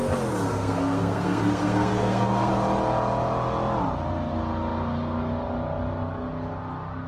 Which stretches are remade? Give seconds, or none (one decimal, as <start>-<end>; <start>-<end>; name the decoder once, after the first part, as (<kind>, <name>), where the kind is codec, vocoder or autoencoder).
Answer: 0.5-2.5 (codec, SNAC)